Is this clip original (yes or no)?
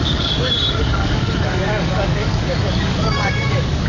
no